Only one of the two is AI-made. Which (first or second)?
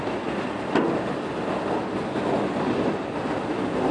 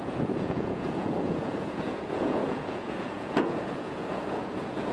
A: second